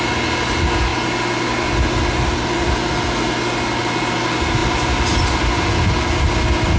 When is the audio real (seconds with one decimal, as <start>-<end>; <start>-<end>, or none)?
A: 0.0-6.8